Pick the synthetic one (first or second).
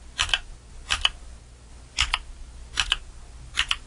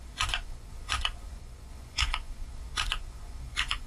second